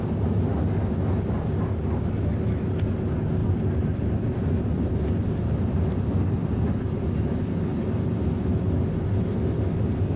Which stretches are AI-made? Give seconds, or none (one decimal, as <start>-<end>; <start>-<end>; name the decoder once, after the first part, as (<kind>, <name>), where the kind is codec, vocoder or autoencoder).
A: 3.4-7.1 (vocoder, BigVGAN v2)